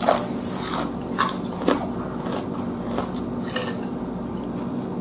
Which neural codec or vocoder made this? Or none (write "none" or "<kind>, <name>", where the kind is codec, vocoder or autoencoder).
none